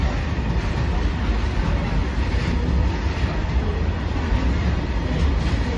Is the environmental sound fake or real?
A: real